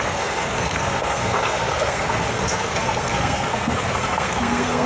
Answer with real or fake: fake